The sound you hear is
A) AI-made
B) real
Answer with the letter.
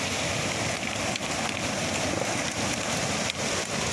B